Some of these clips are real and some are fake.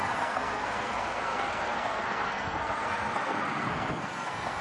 fake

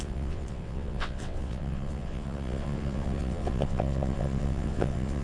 fake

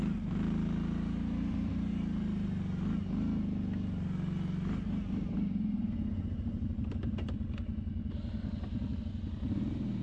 real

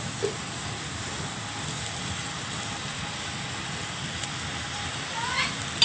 real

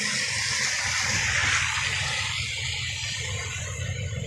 real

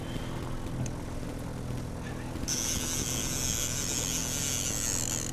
real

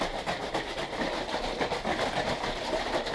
real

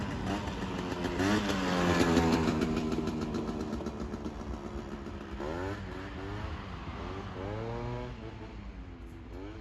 real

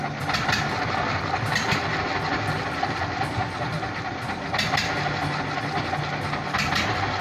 real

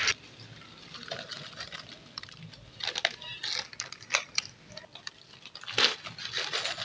real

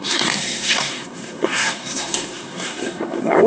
fake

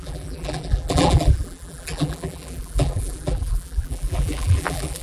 fake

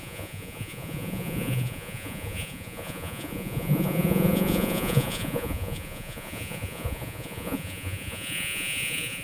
fake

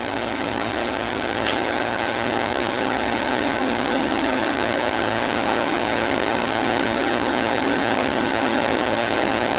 fake